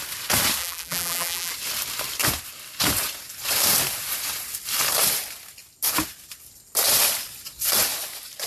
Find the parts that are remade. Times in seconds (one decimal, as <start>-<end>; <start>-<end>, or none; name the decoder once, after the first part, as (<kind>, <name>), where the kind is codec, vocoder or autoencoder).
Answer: 0.6-1.5 (vocoder, BigVGAN v2)